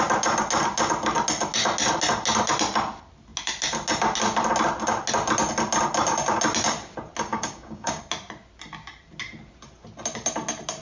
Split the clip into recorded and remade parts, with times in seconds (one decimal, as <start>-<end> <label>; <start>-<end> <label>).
0.0-7.3 recorded; 7.3-8.0 remade; 8.0-10.8 recorded